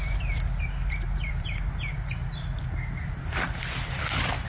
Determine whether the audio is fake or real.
fake